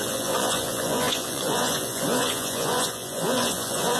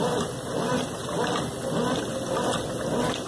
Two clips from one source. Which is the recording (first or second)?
second